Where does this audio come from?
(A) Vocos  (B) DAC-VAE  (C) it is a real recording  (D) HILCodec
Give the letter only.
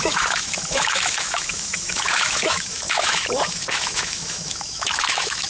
B